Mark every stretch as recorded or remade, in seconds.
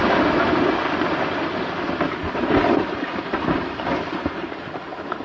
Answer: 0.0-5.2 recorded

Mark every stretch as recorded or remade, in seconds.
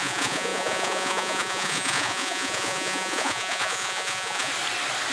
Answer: 0.0-4.5 remade; 4.5-5.1 recorded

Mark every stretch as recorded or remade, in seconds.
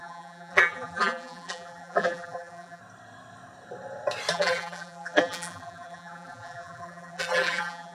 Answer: 0.0-2.8 remade; 2.8-4.3 recorded; 4.3-7.9 remade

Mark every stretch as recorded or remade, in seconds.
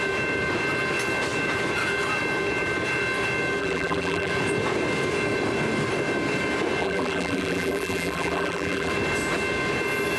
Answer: 0.0-3.6 recorded; 3.6-4.3 remade; 4.3-6.8 recorded; 6.8-8.9 remade; 8.9-10.2 recorded